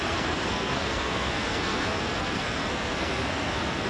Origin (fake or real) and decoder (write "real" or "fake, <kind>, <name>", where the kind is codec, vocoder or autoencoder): fake, codec, SNAC